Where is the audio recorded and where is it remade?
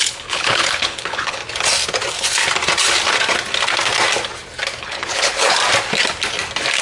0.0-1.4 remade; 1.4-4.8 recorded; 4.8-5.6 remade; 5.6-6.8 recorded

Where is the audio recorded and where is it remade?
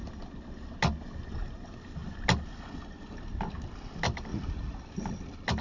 0.0-4.3 recorded; 4.3-4.8 remade; 4.8-5.6 recorded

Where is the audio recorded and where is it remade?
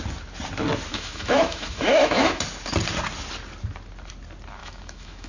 0.0-0.9 recorded; 0.9-2.4 remade; 2.4-4.6 recorded; 4.6-5.3 remade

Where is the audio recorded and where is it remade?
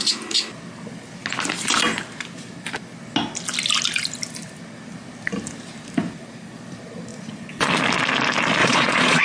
0.0-7.1 recorded; 7.1-7.7 remade; 7.7-8.6 recorded; 8.6-9.2 remade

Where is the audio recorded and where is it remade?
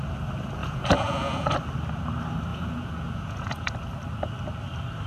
0.0-0.6 recorded; 0.6-1.5 remade; 1.5-2.5 recorded; 2.5-3.7 remade; 3.7-5.1 recorded